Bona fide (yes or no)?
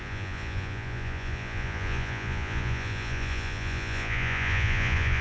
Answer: no